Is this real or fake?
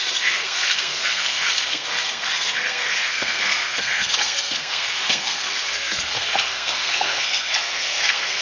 fake